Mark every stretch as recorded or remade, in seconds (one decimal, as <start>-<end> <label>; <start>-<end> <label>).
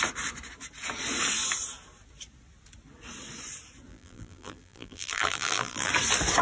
0.0-3.9 recorded; 3.9-5.9 remade; 5.9-6.4 recorded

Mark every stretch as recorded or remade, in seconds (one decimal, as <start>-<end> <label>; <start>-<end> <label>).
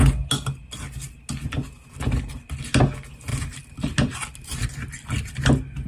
0.0-5.9 recorded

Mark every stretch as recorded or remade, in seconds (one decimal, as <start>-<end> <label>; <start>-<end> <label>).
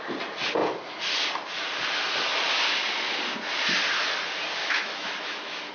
0.0-4.6 recorded; 4.6-5.7 remade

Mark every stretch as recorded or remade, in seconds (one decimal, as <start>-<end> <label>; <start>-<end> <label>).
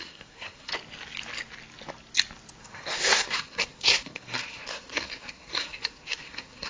0.0-0.7 remade; 0.7-2.6 recorded; 2.6-6.7 remade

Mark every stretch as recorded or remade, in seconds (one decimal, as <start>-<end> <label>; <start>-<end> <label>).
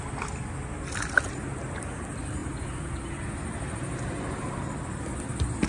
0.0-5.7 recorded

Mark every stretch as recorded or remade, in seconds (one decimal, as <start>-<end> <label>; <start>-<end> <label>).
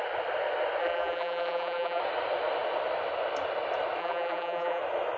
0.0-0.8 recorded; 0.8-2.0 remade; 2.0-4.0 recorded; 4.0-4.8 remade; 4.8-5.2 recorded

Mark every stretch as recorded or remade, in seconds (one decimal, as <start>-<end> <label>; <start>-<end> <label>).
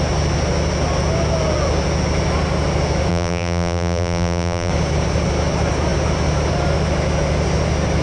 0.0-3.1 recorded; 3.1-4.7 remade; 4.7-8.0 recorded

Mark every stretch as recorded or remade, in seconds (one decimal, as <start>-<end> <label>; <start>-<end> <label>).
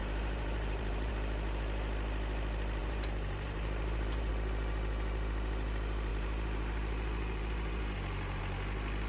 0.0-1.1 remade; 1.1-2.8 recorded; 2.8-4.3 remade; 4.3-6.1 recorded; 6.1-8.4 remade; 8.4-9.1 recorded